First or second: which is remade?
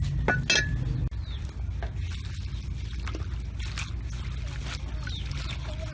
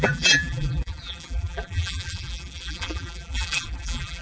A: second